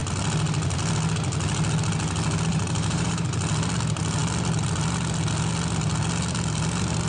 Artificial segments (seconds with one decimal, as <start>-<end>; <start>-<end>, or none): 2.5-3.4